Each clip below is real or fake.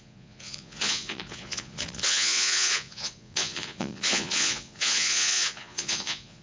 fake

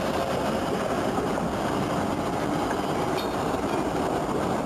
real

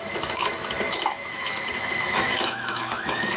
fake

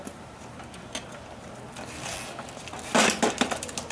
real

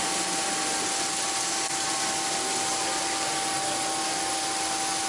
real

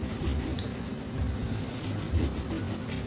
real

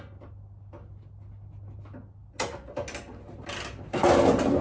real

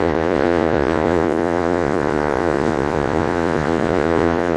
fake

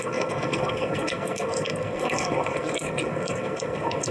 fake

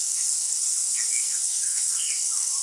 fake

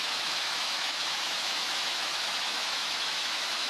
fake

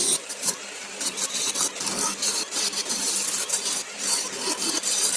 real